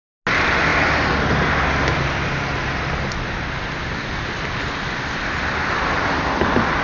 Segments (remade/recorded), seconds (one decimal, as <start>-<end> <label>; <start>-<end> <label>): 0.0-6.8 recorded